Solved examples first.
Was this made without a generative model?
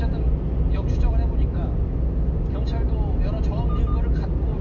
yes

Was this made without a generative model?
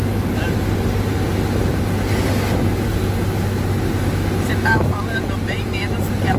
yes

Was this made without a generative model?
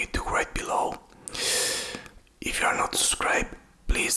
yes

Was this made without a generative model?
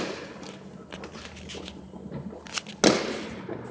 yes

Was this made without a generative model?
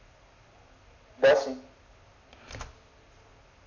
yes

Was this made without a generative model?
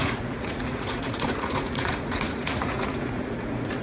no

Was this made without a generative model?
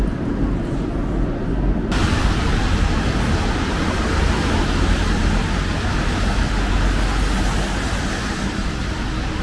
yes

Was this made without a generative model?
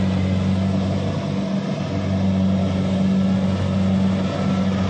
yes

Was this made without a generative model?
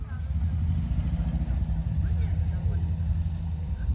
yes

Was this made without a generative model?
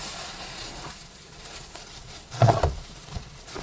no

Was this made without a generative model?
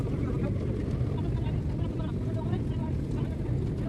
yes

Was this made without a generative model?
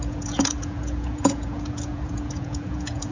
no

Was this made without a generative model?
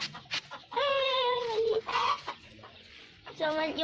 no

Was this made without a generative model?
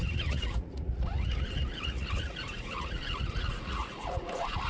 no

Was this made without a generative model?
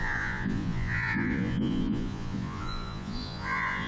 no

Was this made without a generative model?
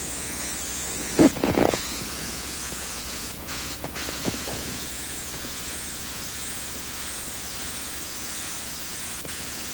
no